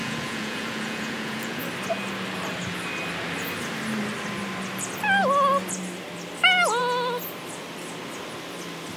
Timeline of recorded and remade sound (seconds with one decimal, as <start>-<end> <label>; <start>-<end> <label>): 0.0-1.6 remade; 1.6-9.0 recorded